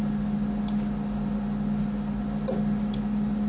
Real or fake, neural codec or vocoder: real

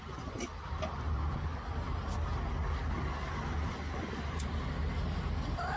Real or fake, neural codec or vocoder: real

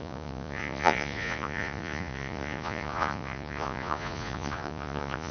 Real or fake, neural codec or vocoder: fake, vocoder, Vocos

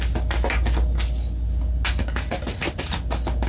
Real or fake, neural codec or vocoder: real